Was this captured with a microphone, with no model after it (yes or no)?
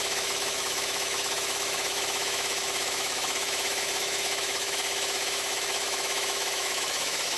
no